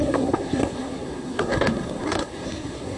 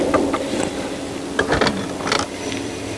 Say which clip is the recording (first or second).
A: second